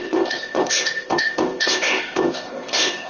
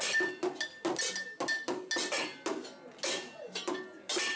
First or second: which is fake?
first